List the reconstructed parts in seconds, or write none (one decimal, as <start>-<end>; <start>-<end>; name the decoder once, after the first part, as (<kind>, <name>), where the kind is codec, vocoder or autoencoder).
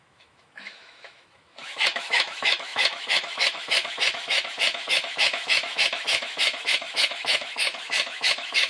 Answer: 0.0-8.7 (autoencoder, DAC-VAE)